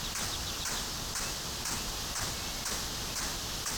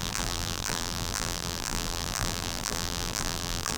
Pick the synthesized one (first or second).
second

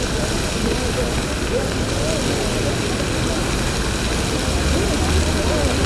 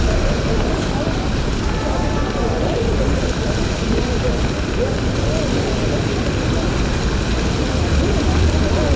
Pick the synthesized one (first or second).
second